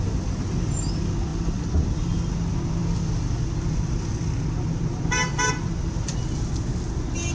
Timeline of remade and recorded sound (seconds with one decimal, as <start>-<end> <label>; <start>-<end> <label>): 0.0-1.3 recorded; 1.3-2.3 remade; 2.3-7.3 recorded